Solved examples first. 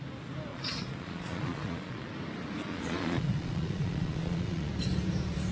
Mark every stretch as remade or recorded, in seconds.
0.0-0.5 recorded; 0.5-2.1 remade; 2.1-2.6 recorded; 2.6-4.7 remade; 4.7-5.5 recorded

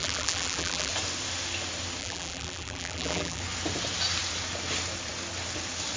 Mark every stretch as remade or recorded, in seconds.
0.0-0.9 remade; 0.9-2.0 recorded; 2.0-3.4 remade; 3.4-6.0 recorded

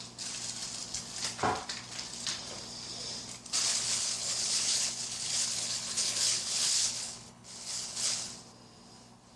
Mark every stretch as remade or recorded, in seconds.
0.0-3.7 recorded; 3.7-8.3 remade; 8.3-9.4 recorded

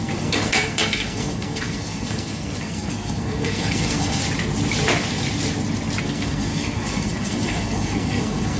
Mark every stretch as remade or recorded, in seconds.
0.0-4.2 remade; 4.2-6.0 recorded; 6.0-8.6 remade

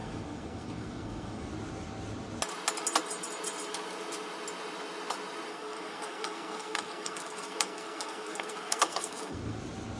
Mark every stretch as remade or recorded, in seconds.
0.0-1.5 remade; 1.5-5.5 recorded; 5.5-9.6 remade; 9.6-10.0 recorded

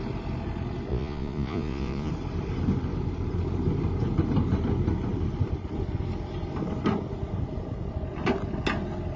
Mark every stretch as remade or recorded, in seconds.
0.0-0.9 recorded; 0.9-2.1 remade; 2.1-9.2 recorded

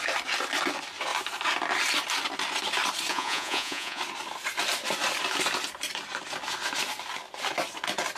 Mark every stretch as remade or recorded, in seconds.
0.0-3.1 recorded; 3.1-4.0 remade; 4.0-8.2 recorded

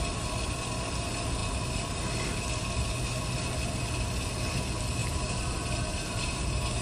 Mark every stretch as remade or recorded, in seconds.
0.0-5.0 recorded; 5.0-6.8 remade